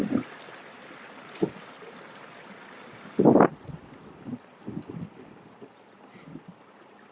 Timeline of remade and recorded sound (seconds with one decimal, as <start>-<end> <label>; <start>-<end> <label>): 0.0-7.1 recorded